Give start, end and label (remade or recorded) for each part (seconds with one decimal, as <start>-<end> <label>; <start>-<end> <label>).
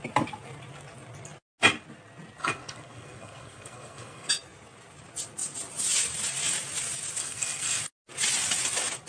0.0-2.4 recorded; 2.4-4.3 remade; 4.3-7.2 recorded; 7.2-7.8 remade; 7.8-9.1 recorded